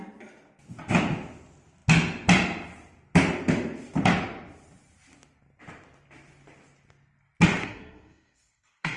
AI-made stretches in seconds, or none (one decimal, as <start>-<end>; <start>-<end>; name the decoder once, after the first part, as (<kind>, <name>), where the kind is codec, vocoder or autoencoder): 7.6-9.0 (codec, SNAC)